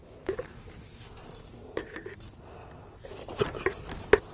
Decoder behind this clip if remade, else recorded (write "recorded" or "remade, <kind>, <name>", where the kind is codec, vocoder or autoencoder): recorded